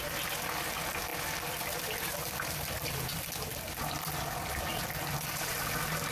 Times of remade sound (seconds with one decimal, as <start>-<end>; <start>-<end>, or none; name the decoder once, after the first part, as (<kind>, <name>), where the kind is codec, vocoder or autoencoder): none